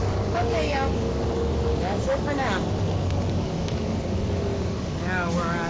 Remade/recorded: remade